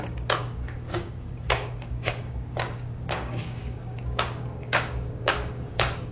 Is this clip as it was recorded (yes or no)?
no